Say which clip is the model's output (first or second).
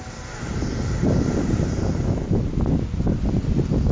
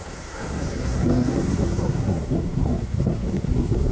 second